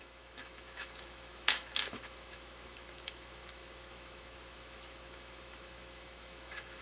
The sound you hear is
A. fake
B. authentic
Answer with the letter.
A